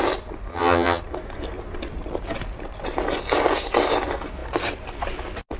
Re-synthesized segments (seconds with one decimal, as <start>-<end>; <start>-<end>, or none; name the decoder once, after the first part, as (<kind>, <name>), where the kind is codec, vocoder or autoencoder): 0.5-1.0 (vocoder, HiFi-GAN)